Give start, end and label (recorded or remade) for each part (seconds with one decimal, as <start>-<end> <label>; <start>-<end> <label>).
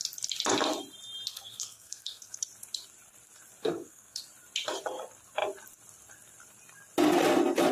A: 0.0-1.3 recorded; 1.3-2.4 remade; 2.4-3.6 recorded; 3.6-4.2 remade; 4.2-7.7 recorded